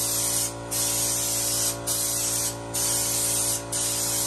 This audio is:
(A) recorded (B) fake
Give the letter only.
A